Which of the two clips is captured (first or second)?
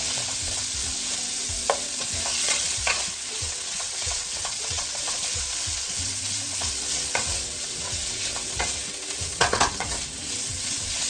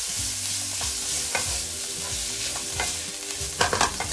second